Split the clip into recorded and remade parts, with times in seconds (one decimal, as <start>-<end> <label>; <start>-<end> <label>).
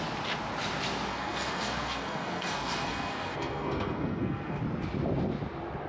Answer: 0.0-1.1 recorded; 1.1-4.6 remade; 4.6-5.9 recorded